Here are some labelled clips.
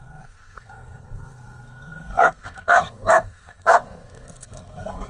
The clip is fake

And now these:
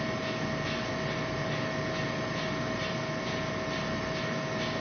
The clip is real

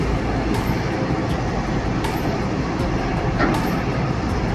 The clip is real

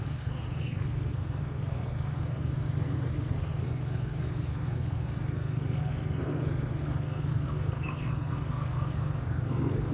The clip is fake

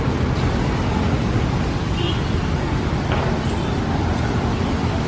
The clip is real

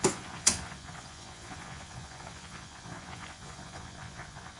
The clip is fake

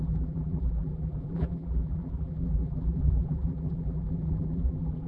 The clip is fake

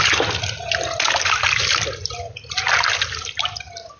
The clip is real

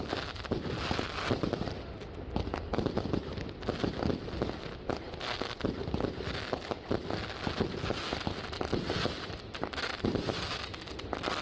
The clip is real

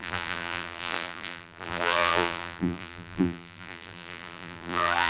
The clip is fake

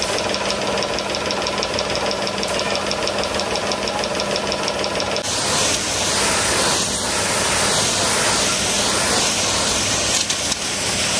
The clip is real